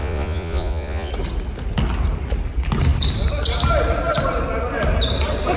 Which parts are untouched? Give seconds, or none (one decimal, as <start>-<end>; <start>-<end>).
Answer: 1.1-5.6